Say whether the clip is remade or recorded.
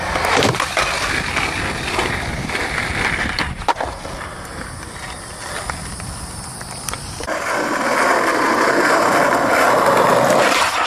recorded